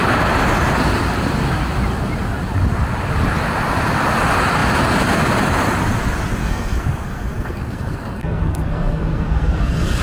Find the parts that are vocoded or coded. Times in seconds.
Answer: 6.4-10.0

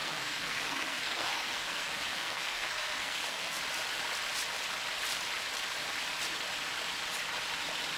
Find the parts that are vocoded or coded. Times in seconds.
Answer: 0.0-3.6

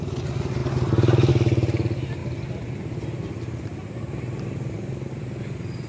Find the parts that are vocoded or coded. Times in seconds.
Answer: none

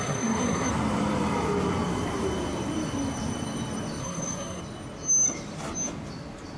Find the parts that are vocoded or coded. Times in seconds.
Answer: 0.0-0.7; 4.0-4.6

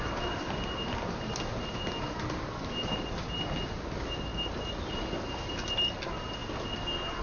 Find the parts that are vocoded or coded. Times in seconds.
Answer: none

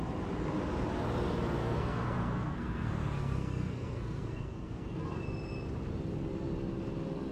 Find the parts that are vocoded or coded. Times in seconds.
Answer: 1.6-5.0

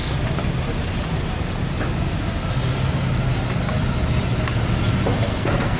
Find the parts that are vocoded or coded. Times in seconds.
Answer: 5.3-5.8

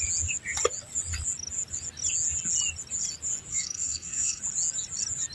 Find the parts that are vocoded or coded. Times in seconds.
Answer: 3.5-4.4